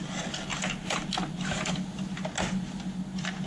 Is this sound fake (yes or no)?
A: no